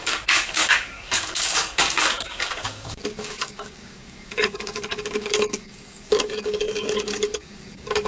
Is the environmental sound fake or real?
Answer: fake